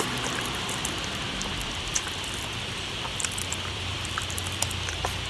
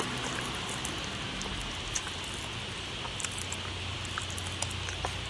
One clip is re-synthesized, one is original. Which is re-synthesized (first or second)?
first